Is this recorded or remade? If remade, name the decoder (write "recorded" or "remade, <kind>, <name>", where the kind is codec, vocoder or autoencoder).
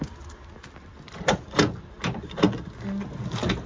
recorded